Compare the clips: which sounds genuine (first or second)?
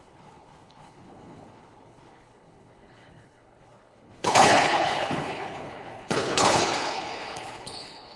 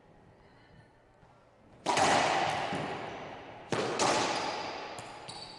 second